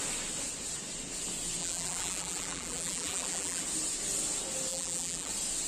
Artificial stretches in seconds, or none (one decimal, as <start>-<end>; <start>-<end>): 1.6-3.6; 4.7-5.3